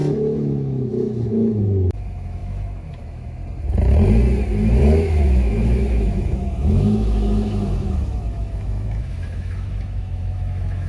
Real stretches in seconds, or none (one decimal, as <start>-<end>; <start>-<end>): 3.4-4.8